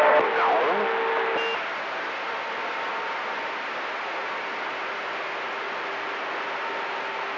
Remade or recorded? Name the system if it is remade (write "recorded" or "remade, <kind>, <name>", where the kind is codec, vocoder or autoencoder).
recorded